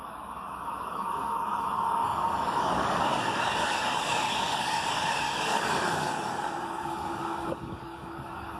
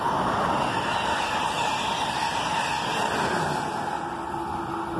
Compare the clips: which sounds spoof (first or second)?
first